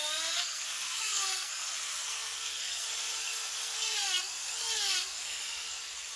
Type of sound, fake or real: fake